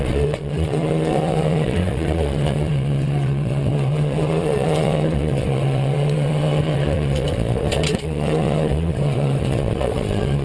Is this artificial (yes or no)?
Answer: yes